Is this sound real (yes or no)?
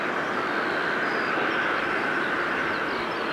yes